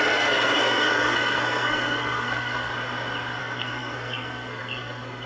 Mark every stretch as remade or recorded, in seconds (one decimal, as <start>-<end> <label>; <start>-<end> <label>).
0.0-2.7 remade; 2.7-3.4 recorded; 3.4-5.3 remade